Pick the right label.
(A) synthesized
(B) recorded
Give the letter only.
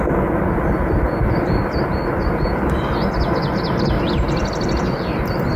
B